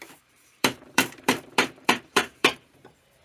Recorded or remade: remade